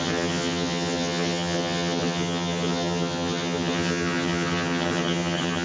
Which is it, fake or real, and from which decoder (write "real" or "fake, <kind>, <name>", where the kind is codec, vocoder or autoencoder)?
fake, vocoder, HiFi-GAN